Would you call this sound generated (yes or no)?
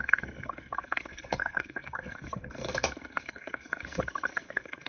yes